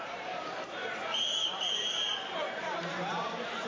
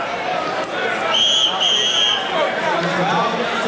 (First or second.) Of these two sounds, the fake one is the first